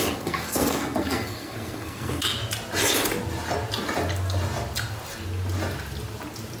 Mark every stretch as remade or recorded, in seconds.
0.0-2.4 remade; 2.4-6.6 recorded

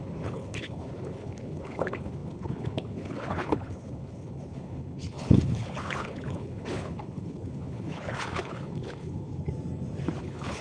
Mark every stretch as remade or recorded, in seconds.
0.0-9.5 remade; 9.5-10.2 recorded; 10.2-10.6 remade